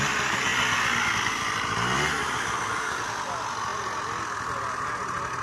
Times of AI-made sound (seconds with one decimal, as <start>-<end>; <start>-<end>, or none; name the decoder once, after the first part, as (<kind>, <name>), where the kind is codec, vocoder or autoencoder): none

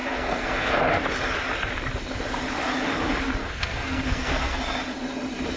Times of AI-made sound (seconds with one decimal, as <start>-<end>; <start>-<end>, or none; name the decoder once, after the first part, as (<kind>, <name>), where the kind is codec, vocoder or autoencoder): 0.0-0.8 (codec, SNAC); 3.4-4.6

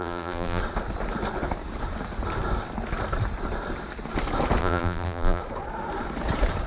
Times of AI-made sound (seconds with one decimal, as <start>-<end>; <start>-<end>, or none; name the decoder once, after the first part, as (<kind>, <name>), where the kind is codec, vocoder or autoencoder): 0.0-0.6 (vocoder, BigVGAN v2); 4.6-5.4

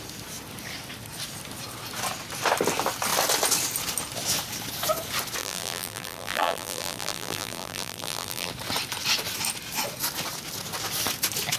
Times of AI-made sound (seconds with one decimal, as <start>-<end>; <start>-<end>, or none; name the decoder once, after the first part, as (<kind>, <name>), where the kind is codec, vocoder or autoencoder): 5.4-8.5 (vocoder, BigVGAN v2)

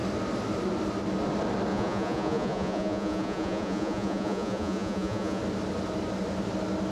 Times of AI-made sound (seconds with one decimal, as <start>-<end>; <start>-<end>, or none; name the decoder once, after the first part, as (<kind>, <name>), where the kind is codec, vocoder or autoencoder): 1.7-5.4 (vocoder, Vocos)

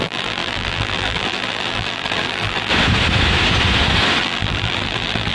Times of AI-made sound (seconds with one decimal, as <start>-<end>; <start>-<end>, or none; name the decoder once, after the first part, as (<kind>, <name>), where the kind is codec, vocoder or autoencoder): 0.0-2.7 (vocoder, BigVGAN v2); 4.2-5.3